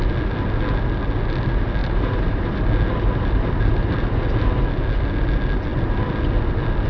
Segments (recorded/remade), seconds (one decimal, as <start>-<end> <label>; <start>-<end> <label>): 0.0-1.8 recorded; 1.8-2.6 remade; 2.6-6.9 recorded